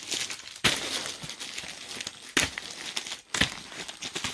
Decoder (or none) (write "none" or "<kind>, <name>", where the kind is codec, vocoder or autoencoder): none